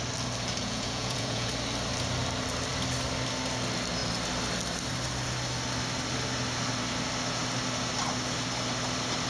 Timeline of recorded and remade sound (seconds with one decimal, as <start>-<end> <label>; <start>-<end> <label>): 0.0-0.6 recorded; 0.6-1.5 remade; 1.5-9.3 recorded